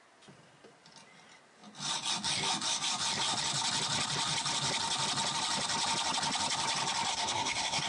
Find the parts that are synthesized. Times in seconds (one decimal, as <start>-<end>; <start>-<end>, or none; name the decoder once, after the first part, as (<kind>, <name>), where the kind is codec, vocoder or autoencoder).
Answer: 7.1-7.9 (codec, SNAC)